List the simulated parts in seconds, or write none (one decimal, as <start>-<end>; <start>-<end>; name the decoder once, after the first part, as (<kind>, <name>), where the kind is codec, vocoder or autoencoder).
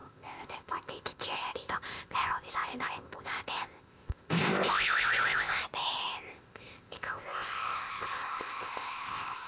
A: 0.0-5.6 (codec, ZipCodec); 6.1-9.5